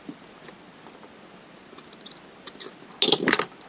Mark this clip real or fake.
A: real